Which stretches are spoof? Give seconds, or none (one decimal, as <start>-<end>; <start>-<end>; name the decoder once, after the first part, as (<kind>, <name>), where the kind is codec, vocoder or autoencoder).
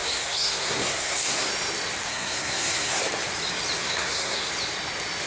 0.0-1.5 (codec, SNAC); 2.1-3.0; 3.8-4.5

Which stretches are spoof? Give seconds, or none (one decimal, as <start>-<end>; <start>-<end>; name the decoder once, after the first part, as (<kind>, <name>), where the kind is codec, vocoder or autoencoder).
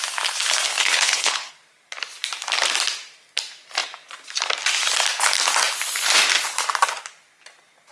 0.7-1.5 (codec, HILCodec)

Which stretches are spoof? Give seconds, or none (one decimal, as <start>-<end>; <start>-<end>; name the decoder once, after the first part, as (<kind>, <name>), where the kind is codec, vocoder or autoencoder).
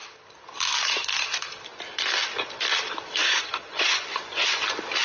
3.2-4.6 (vocoder, Vocos)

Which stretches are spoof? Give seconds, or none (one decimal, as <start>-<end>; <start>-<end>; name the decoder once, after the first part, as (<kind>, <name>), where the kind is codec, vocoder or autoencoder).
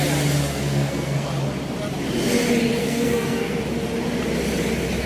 0.4-1.3 (codec, SNAC); 2.8-3.6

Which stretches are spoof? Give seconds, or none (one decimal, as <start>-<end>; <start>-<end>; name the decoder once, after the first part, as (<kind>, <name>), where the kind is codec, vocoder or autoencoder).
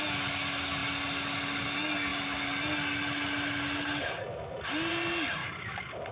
5.4-6.1 (codec, DAC)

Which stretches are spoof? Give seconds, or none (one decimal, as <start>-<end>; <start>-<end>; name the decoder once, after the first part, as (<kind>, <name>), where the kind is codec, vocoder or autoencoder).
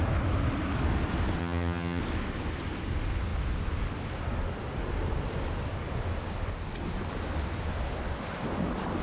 1.4-2.0 (vocoder, HiFi-GAN)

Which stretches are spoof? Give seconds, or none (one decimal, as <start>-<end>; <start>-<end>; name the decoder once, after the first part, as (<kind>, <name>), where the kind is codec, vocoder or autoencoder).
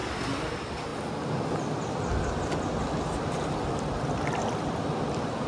none